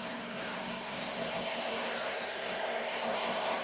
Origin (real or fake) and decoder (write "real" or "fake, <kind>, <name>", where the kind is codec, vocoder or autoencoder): fake, codec, SNAC